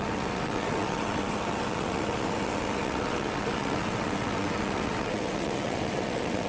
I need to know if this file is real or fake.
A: fake